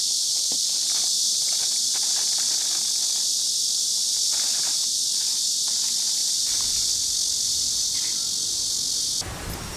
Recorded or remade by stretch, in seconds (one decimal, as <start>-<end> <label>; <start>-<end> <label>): 0.0-6.2 recorded; 6.2-6.9 remade; 6.9-9.8 recorded